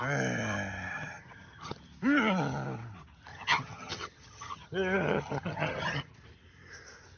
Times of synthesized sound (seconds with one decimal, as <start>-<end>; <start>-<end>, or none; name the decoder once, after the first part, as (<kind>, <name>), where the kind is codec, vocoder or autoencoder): 0.9-1.8 (vocoder, HiFi-GAN); 3.3-6.1